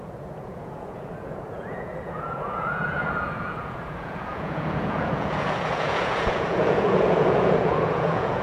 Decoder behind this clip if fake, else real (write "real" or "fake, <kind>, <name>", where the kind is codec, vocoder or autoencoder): fake, vocoder, Vocos